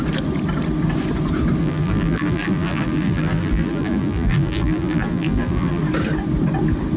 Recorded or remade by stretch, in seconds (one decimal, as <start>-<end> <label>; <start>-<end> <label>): 0.0-1.6 recorded; 1.6-5.8 remade; 5.8-7.0 recorded